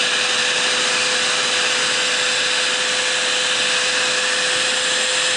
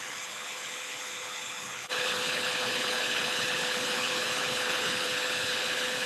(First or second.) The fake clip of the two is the second